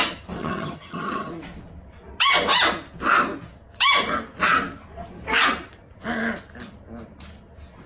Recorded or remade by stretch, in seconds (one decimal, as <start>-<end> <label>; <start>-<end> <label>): 0.0-0.4 recorded; 0.4-1.3 remade; 1.3-7.9 recorded